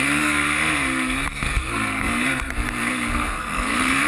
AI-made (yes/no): yes